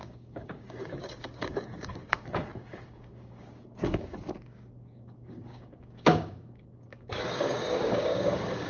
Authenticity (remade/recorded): remade